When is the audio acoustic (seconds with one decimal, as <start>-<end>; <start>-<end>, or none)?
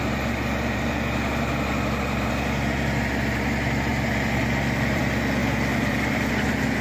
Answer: 0.0-3.9; 5.0-5.4; 6.3-6.8